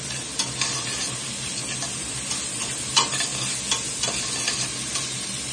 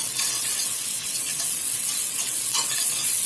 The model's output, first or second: second